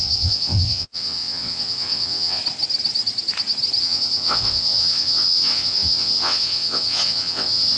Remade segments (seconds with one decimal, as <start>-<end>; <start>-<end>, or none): 0.0-2.4; 3.8-7.8